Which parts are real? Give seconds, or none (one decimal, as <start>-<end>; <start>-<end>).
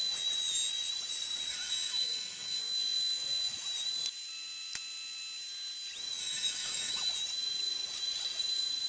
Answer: 0.0-1.5; 2.6-6.2; 7.1-8.9